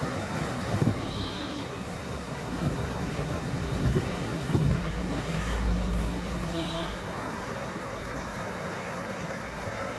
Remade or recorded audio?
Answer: remade